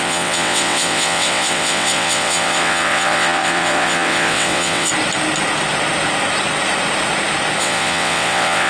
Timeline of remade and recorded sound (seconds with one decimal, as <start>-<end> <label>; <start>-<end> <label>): 0.0-4.9 remade; 4.9-7.6 recorded; 7.6-8.7 remade